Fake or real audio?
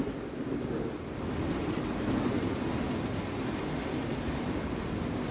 real